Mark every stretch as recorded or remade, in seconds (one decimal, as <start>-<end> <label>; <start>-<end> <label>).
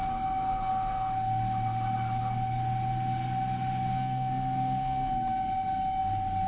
0.0-3.9 recorded; 3.9-5.1 remade; 5.1-6.5 recorded